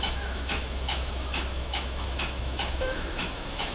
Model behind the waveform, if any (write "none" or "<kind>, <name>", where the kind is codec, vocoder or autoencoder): autoencoder, DAC-VAE